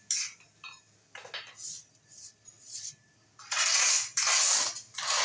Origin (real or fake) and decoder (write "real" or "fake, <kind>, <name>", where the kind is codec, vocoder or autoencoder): real